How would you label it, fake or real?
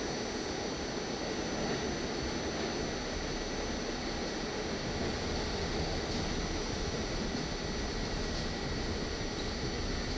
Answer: real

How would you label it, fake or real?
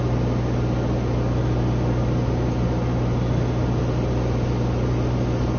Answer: real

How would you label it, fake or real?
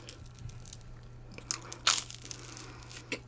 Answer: real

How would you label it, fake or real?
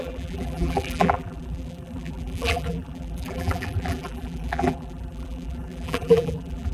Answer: fake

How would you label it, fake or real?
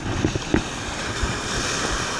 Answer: real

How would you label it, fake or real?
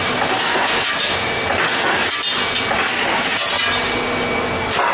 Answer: real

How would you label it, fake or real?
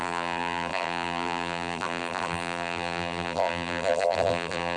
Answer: fake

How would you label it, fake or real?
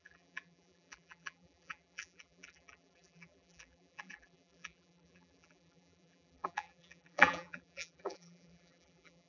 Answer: fake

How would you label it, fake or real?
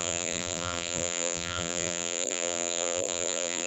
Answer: fake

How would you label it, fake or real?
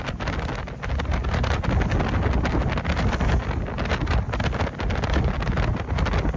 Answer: real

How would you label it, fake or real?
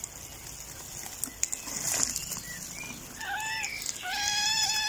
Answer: real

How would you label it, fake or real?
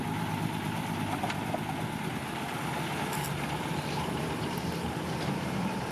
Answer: fake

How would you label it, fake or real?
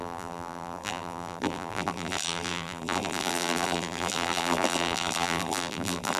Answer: fake